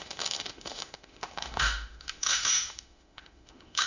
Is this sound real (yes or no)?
no